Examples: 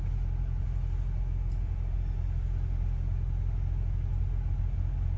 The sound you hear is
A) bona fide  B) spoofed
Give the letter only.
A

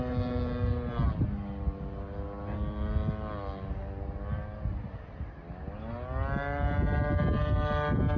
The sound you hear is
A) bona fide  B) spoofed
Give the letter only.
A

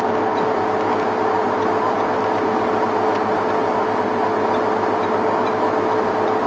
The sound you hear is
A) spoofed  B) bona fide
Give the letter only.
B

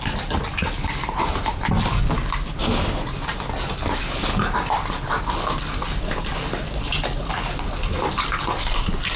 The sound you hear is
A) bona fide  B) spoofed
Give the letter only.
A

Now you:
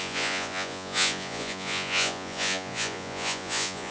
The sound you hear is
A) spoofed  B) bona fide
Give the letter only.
A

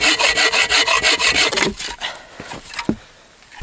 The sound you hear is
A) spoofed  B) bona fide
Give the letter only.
B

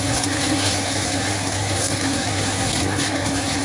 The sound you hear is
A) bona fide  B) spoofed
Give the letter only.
B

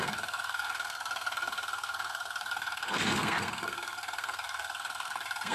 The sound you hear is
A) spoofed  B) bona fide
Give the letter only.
A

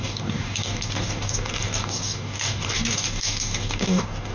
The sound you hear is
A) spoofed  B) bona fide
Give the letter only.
A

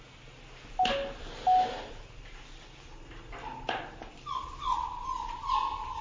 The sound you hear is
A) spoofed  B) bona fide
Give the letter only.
B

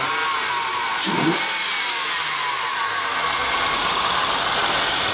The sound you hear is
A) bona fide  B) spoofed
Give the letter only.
A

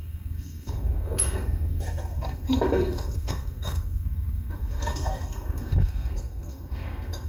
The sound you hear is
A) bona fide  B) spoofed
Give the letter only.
B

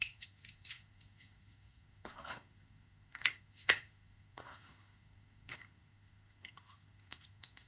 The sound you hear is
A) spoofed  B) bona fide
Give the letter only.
A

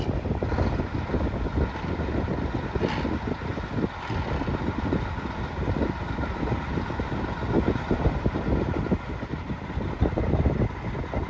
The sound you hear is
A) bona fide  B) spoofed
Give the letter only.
A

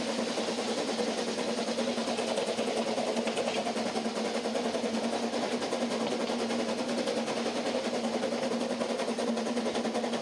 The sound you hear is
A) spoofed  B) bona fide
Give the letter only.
B